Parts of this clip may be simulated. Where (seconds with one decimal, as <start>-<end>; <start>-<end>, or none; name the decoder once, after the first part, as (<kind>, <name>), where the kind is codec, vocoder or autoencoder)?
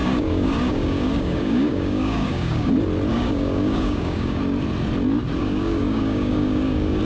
0.0-2.7 (codec, DAC); 3.1-4.4; 5.4-7.0